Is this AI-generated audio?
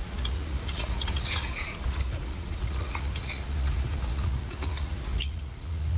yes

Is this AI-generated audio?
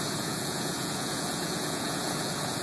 yes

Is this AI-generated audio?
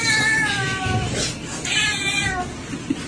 no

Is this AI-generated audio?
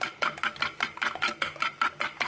no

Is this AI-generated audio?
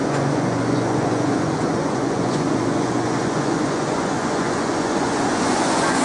yes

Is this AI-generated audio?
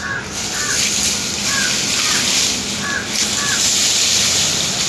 no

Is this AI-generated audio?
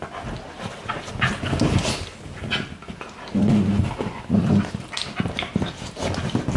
no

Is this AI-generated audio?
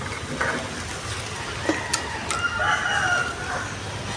no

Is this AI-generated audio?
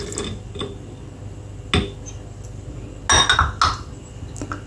no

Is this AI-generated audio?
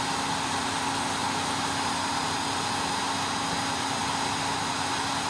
no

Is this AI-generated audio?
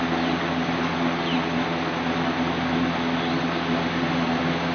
no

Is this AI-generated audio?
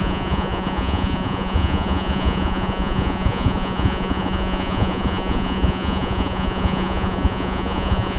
yes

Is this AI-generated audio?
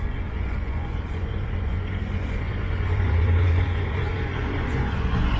yes